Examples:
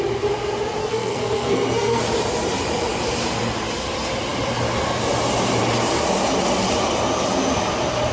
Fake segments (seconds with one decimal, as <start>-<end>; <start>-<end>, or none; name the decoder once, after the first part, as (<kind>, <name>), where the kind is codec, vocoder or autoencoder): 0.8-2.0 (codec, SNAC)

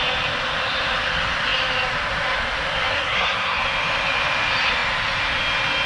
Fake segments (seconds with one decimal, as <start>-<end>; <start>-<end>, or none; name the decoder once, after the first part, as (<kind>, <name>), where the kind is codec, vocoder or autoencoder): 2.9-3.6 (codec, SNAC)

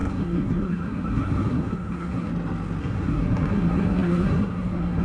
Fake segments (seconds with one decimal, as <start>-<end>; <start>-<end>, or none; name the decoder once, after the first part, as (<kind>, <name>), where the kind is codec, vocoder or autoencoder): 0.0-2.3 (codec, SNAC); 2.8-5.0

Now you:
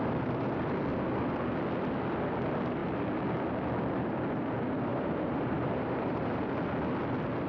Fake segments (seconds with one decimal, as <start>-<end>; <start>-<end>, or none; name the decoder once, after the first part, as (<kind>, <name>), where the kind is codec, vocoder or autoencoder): 4.9-6.5 (vocoder, BigVGAN v2)

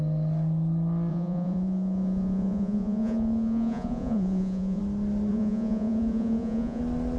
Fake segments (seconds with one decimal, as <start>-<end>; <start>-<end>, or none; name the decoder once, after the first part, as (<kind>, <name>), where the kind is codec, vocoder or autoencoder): 1.1-4.8 (vocoder, Vocos); 5.3-6.8

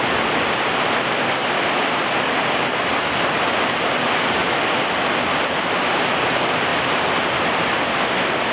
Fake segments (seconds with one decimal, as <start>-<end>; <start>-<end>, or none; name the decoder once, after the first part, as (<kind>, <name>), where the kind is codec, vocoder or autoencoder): none

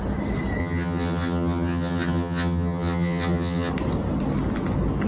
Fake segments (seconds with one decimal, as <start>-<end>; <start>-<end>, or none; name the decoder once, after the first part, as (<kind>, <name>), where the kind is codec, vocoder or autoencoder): 0.6-3.7 (vocoder, HiFi-GAN)

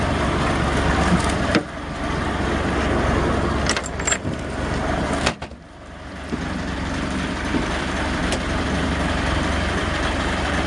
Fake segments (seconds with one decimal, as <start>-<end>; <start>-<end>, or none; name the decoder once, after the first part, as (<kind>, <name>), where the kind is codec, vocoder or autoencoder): none